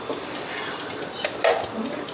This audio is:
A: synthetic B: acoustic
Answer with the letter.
B